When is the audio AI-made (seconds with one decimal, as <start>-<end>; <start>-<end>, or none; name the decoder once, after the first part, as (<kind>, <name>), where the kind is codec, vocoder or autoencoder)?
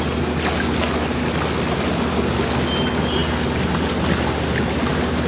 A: none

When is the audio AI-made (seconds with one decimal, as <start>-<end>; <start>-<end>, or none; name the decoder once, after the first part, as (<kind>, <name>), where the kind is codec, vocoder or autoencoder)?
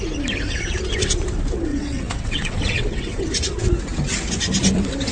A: 1.7-3.2 (vocoder, WaveNeXt)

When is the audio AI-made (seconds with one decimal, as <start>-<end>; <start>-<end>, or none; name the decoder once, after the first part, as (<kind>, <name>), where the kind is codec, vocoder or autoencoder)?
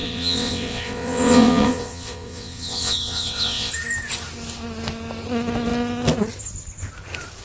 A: 0.0-3.7 (vocoder, WaveNeXt)